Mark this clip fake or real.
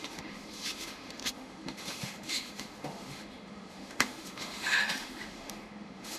fake